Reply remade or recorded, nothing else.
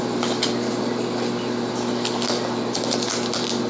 recorded